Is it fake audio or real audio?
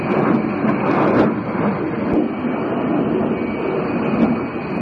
real